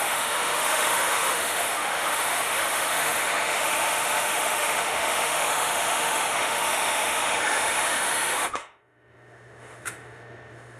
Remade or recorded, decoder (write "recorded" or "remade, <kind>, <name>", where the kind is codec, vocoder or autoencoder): remade, autoencoder, DAC-VAE